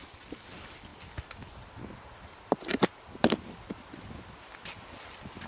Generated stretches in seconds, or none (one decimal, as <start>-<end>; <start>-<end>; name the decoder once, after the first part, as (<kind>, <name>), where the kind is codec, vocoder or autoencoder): 0.9-2.9 (vocoder, BigVGAN v2)